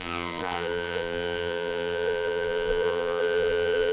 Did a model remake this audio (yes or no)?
yes